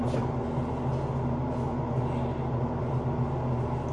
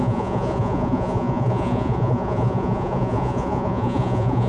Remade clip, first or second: second